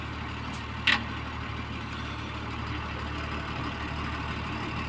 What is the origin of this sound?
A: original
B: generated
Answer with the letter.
A